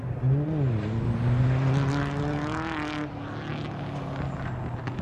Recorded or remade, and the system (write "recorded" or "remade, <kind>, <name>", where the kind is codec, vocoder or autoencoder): recorded